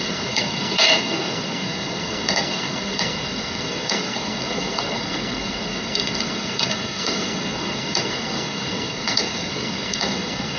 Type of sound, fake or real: fake